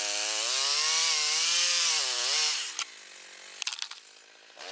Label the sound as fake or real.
real